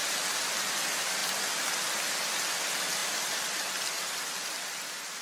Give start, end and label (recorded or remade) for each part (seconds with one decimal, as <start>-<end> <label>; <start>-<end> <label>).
0.0-5.2 recorded

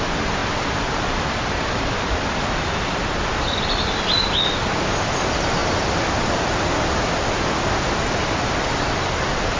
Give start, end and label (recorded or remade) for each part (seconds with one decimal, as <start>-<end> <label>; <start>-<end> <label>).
0.0-0.4 recorded; 0.4-3.5 remade; 3.5-9.6 recorded

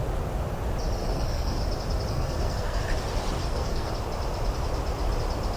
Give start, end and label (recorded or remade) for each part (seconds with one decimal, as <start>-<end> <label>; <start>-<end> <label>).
0.0-1.0 recorded; 1.0-1.6 remade; 1.6-2.1 recorded; 2.1-2.8 remade; 2.8-3.4 recorded; 3.4-3.9 remade; 3.9-5.6 recorded